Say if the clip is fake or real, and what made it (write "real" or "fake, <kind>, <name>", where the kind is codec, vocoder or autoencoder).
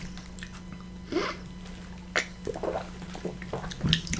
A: real